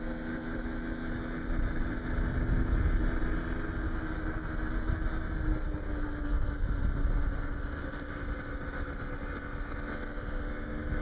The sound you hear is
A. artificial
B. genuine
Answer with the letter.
B